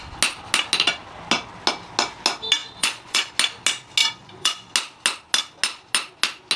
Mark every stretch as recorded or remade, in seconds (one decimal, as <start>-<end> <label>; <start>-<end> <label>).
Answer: 0.0-2.6 recorded; 2.6-3.3 remade; 3.3-4.0 recorded; 4.0-4.7 remade; 4.7-6.6 recorded